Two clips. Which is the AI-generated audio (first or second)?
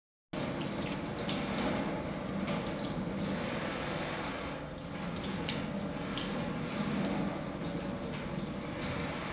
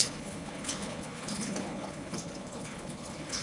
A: second